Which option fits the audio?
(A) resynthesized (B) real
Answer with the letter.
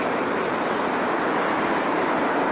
B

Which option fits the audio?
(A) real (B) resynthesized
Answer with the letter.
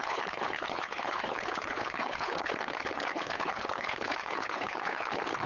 B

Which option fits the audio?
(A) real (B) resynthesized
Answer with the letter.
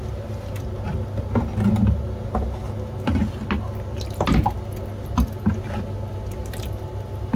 A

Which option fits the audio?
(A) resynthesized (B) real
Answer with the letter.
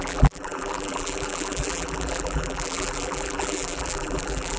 A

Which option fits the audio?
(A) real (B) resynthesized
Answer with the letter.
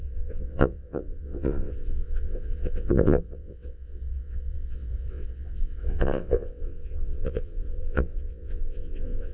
B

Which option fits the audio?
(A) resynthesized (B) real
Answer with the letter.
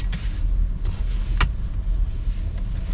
B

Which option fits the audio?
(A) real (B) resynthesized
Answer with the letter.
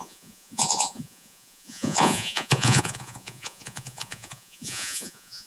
B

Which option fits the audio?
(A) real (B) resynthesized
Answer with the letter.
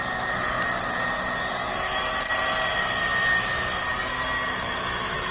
A